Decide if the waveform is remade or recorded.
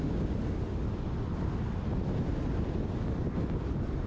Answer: recorded